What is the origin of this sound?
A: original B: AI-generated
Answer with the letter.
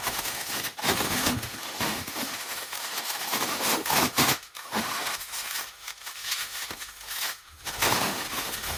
B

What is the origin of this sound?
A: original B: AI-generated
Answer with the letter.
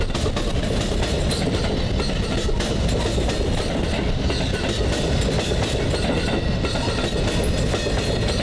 A